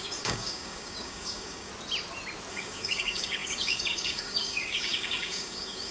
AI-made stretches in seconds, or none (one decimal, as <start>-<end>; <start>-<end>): 0.0-1.7; 2.5-5.9